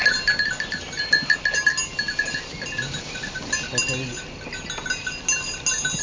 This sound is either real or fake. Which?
real